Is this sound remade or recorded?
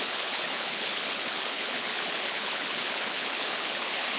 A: remade